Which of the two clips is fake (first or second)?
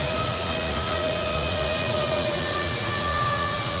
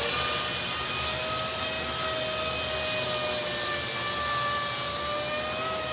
first